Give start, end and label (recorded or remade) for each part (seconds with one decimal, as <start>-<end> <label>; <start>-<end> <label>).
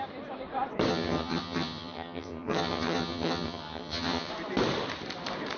0.0-0.9 recorded; 0.9-4.3 remade; 4.3-5.6 recorded